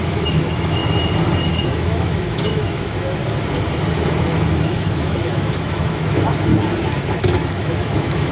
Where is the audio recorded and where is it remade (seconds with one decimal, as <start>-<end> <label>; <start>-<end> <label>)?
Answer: 0.0-0.8 remade; 0.8-1.5 recorded; 1.5-3.2 remade; 3.2-3.9 recorded; 3.9-6.5 remade; 6.5-7.1 recorded; 7.1-8.3 remade

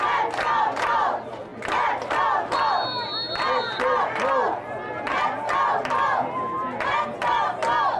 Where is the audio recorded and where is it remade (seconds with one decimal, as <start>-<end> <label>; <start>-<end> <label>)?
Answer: 0.0-8.0 recorded

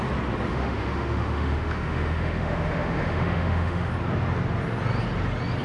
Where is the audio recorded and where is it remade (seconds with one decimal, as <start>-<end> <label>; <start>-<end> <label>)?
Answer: 0.0-0.5 recorded; 0.5-3.9 remade; 3.9-5.6 recorded

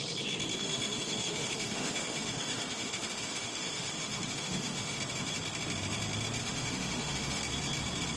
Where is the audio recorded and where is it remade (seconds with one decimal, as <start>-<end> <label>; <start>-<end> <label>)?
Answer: 0.0-0.5 recorded; 0.5-5.0 remade; 5.0-6.4 recorded; 6.4-7.4 remade; 7.4-8.2 recorded

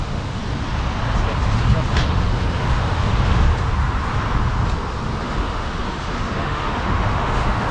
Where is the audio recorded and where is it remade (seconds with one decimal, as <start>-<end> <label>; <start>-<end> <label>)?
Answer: 0.0-0.4 remade; 0.4-1.9 recorded; 1.9-3.5 remade; 3.5-5.2 recorded; 5.2-7.7 remade